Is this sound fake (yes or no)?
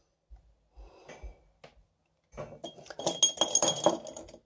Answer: no